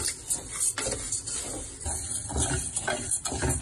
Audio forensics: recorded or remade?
recorded